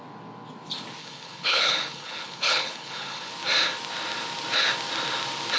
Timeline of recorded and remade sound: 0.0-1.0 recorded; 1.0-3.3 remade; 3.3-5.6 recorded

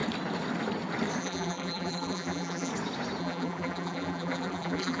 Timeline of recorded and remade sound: 0.0-1.2 recorded; 1.2-2.7 remade; 2.7-3.2 recorded; 3.2-5.0 remade

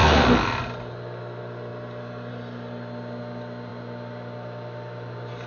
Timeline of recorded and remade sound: 0.0-5.5 recorded

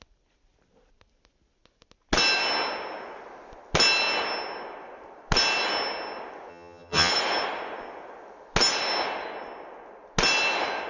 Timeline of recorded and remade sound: 0.0-6.5 recorded; 6.5-7.1 remade; 7.1-10.9 recorded

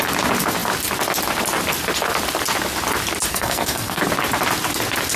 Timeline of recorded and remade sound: 0.0-3.3 recorded; 3.3-4.0 remade; 4.0-5.2 recorded

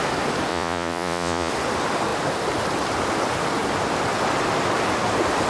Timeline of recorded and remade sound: 0.0-0.5 recorded; 0.5-1.5 remade; 1.5-5.5 recorded